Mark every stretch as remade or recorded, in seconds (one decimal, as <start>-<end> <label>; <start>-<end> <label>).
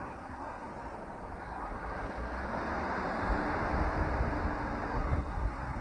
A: 0.0-0.7 remade; 0.7-1.4 recorded; 1.4-2.4 remade; 2.4-4.9 recorded; 4.9-5.8 remade